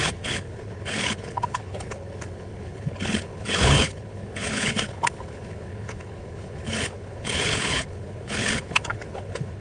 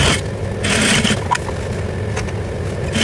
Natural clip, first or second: second